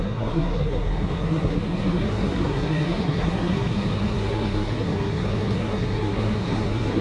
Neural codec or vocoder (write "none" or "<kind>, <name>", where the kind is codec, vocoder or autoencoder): codec, SNAC